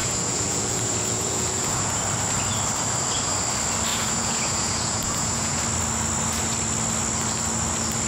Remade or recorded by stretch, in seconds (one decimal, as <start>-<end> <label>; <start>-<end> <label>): 0.0-2.0 remade; 2.0-3.9 recorded; 3.9-5.6 remade; 5.6-8.1 recorded